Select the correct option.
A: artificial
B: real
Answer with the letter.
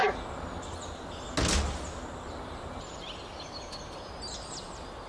B